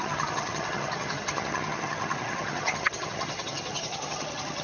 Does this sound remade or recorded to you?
remade